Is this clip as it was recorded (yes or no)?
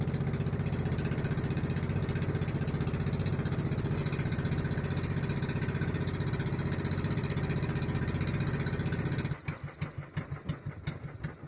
yes